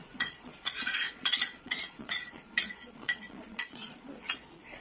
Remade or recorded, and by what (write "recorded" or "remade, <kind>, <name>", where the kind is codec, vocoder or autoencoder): remade, vocoder, Vocos